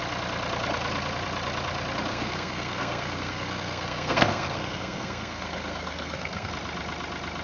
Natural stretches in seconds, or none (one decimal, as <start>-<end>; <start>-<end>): 0.0-2.1; 6.5-7.4